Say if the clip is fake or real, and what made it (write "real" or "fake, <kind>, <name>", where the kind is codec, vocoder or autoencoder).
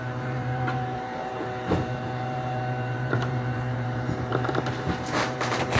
fake, vocoder, BigVGAN v2